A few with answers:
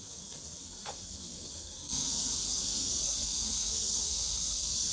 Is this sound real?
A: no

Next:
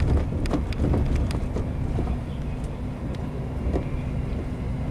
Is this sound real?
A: yes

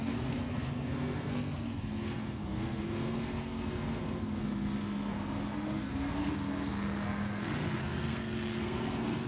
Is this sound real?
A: no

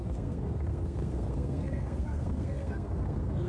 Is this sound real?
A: no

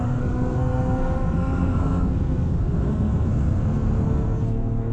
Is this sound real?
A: no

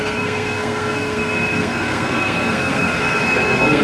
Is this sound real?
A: no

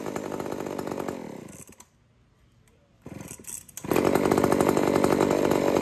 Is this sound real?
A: yes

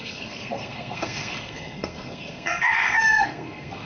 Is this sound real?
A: no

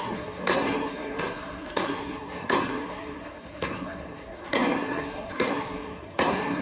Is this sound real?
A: no